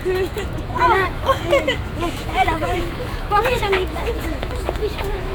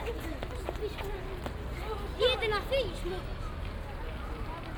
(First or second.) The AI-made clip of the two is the first